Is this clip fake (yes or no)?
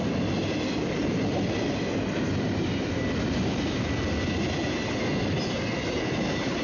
no